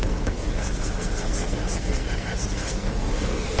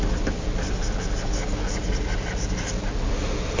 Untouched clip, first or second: second